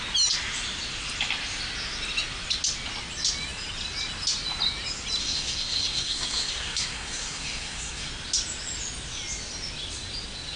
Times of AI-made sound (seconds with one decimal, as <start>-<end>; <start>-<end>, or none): 5.2-8.1